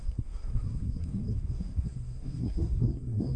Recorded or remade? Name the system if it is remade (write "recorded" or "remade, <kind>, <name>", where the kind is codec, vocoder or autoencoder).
remade, codec, SNAC